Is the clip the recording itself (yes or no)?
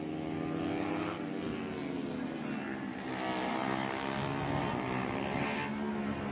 yes